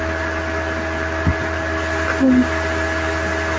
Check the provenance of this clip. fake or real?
real